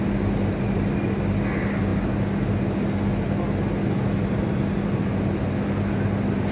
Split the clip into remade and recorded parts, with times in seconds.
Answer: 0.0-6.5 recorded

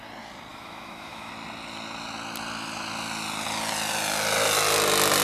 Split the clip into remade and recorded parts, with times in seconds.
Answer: 0.0-0.5 recorded; 0.5-1.3 remade; 1.3-5.2 recorded

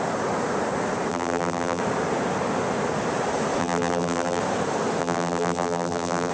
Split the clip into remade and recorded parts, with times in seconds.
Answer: 0.0-1.1 recorded; 1.1-1.8 remade; 1.8-3.6 recorded; 3.6-4.4 remade; 4.4-5.0 recorded; 5.0-6.3 remade